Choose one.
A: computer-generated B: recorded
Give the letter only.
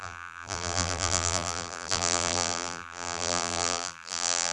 A